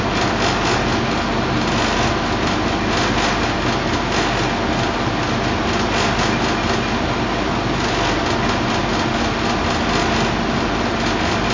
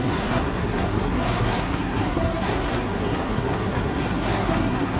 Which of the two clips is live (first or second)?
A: first